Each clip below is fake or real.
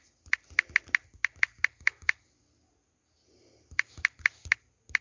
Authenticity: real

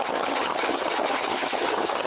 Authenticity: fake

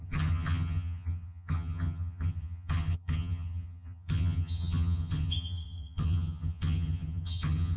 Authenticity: fake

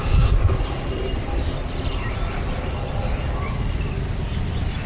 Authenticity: real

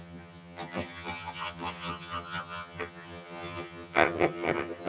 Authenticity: fake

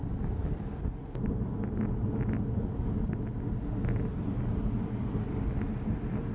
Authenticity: real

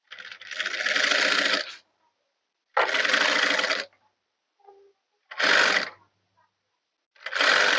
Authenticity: real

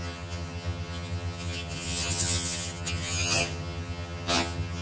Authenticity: fake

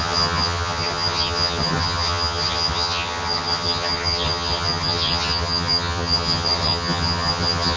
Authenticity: fake